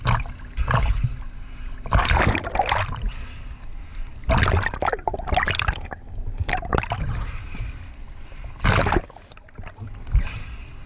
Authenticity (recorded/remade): recorded